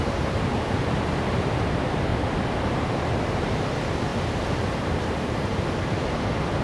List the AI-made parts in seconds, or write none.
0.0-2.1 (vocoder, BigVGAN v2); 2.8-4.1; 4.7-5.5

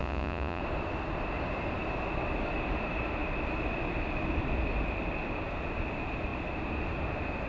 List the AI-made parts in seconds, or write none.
0.0-0.6 (vocoder, Vocos)

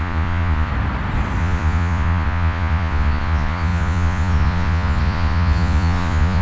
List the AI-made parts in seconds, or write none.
0.0-0.7 (vocoder, Vocos); 1.4-6.4

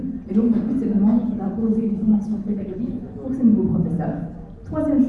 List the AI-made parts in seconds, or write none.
1.6-2.8 (codec, HILCodec)